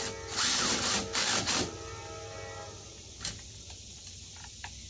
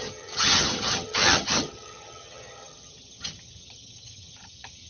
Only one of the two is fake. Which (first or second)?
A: second